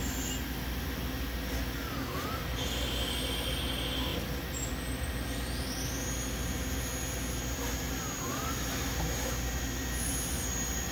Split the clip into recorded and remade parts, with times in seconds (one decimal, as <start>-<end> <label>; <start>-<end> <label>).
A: 0.0-10.9 recorded